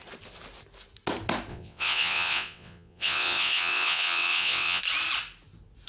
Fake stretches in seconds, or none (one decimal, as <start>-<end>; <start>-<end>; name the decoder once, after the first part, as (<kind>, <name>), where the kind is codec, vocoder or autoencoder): 1.5-4.8 (vocoder, WaveNeXt)